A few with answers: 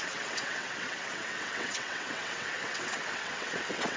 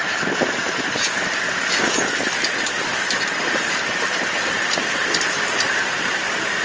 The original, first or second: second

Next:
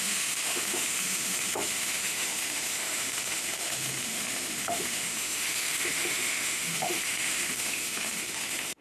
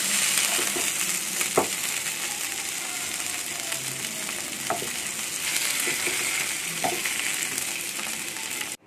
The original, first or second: second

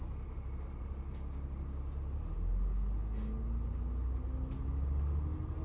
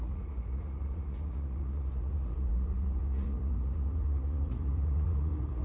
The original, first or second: first